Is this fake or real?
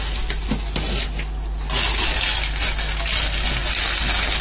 real